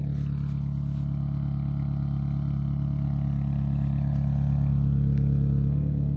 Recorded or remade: recorded